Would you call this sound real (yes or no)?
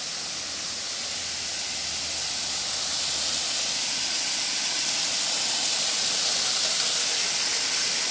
yes